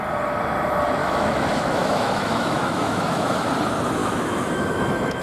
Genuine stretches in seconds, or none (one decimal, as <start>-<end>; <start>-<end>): 0.0-1.0; 3.5-4.0